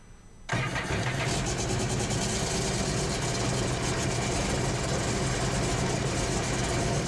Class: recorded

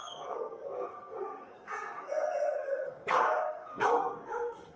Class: remade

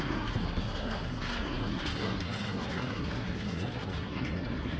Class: remade